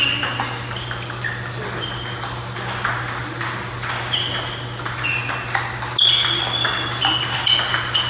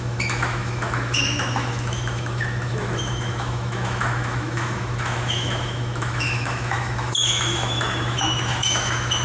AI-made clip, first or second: second